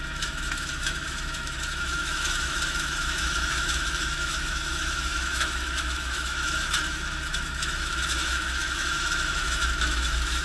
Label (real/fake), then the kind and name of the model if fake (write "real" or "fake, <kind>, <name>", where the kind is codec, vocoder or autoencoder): fake, autoencoder, DAC-VAE